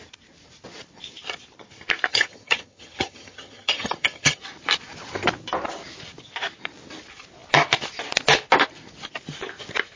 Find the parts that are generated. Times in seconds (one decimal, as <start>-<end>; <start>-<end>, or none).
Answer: 2.1-4.4